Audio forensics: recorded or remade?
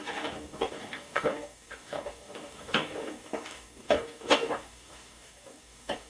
remade